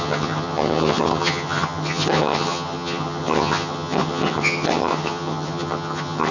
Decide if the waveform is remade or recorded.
remade